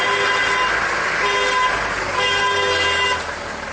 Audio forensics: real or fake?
real